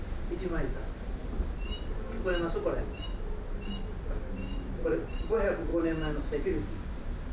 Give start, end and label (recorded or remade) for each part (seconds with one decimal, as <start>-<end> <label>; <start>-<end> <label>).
0.0-1.2 remade; 1.2-4.2 recorded; 4.2-5.7 remade; 5.7-6.8 recorded; 6.8-7.3 remade